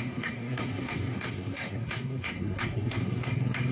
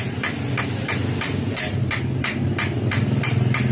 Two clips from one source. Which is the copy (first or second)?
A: first